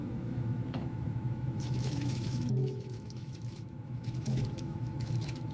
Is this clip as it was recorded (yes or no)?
no